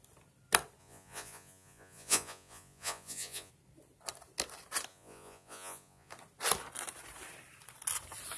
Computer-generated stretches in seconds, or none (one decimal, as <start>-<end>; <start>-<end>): 0.8-3.5; 4.9-6.1